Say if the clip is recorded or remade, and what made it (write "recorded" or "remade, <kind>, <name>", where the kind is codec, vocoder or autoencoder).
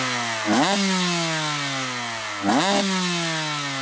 recorded